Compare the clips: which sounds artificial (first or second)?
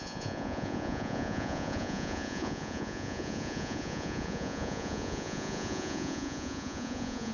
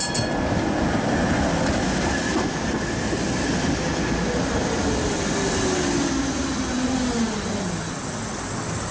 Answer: first